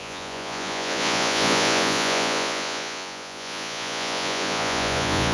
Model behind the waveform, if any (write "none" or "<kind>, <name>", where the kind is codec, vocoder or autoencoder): vocoder, Vocos